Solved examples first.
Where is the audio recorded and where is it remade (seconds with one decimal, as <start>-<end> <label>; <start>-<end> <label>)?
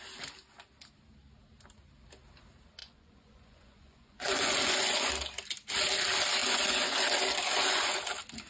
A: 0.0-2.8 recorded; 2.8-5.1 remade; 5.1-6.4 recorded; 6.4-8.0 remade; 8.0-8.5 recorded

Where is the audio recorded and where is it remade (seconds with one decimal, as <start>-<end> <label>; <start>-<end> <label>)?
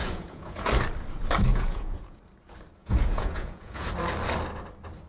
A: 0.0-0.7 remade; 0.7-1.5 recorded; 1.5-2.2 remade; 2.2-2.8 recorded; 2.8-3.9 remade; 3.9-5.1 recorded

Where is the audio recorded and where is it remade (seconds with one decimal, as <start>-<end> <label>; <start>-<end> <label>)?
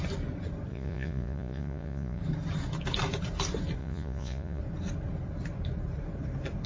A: 0.0-0.7 recorded; 0.7-2.2 remade; 2.2-3.8 recorded; 3.8-4.6 remade; 4.6-6.7 recorded